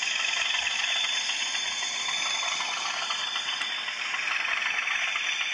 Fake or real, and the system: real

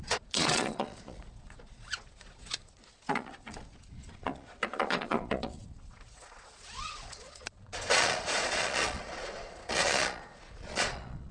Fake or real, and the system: fake, vocoder, Vocos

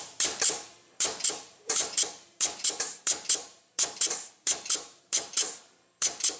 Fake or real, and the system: fake, vocoder, BigVGAN v2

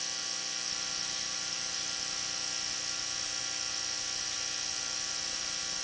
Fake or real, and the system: real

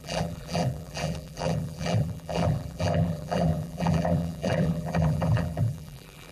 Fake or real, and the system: fake, vocoder, BigVGAN v2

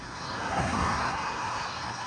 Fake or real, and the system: fake, codec, SNAC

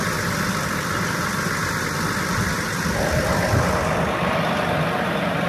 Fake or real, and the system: fake, vocoder, BigVGAN v2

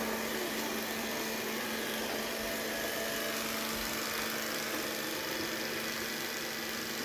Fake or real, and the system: real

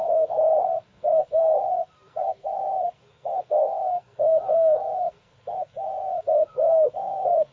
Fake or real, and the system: fake, codec, SNAC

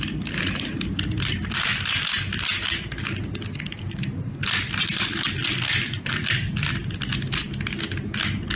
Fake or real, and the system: real